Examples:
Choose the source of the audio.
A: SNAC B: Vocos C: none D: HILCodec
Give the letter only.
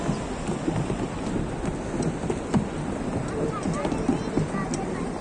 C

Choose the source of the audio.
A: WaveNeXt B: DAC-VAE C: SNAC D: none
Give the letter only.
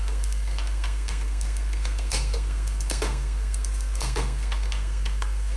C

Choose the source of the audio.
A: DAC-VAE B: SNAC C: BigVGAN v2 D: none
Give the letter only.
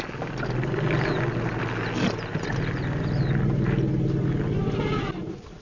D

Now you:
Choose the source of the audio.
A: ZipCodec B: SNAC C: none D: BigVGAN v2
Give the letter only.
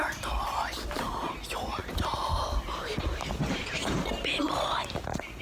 C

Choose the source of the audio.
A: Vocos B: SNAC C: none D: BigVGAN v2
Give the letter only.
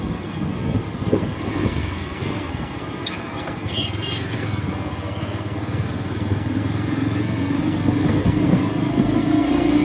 B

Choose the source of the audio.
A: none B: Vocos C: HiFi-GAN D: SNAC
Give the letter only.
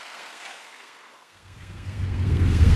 D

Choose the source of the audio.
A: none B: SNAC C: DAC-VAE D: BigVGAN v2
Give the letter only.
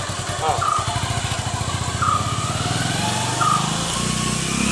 A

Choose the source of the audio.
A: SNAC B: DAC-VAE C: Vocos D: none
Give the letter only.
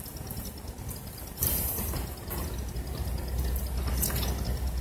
D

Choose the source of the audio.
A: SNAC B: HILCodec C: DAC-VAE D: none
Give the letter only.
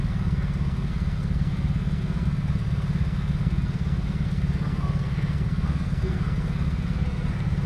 A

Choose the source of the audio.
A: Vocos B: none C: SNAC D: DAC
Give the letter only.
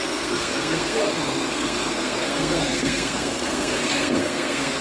C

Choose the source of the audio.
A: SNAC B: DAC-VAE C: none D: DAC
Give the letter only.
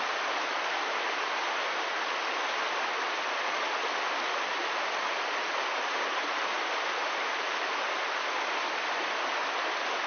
C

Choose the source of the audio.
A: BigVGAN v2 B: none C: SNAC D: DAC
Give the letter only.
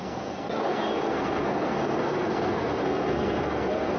C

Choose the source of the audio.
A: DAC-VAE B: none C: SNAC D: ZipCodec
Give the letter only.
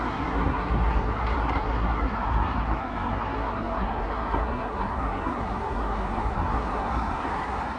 C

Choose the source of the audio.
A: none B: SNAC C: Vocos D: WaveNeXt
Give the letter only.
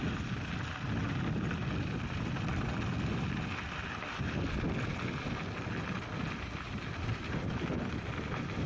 A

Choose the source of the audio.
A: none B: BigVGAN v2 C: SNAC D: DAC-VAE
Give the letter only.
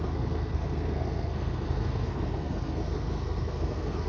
C